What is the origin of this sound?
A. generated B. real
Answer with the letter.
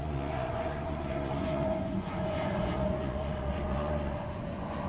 A